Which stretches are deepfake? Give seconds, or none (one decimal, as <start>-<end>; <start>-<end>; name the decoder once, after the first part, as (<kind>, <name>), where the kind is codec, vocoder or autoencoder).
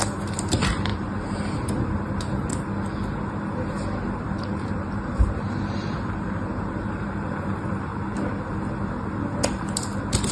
0.0-2.5 (vocoder, BigVGAN v2); 4.4-7.9